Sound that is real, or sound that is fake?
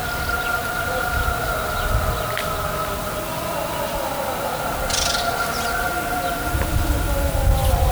real